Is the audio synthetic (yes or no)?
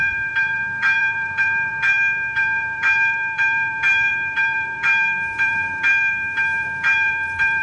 yes